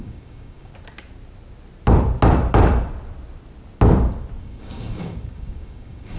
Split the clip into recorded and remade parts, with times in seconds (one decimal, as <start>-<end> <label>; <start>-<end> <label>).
0.0-0.7 remade; 0.7-4.4 recorded; 4.4-6.2 remade